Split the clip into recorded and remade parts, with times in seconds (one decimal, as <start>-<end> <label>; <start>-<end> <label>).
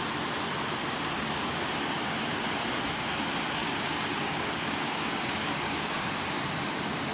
0.0-3.6 recorded; 3.6-6.1 remade; 6.1-7.1 recorded